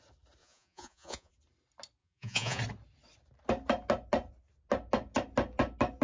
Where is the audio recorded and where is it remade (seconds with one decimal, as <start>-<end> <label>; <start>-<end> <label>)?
0.0-0.4 recorded; 0.4-1.3 remade; 1.3-2.0 recorded; 2.0-2.6 remade; 2.6-6.0 recorded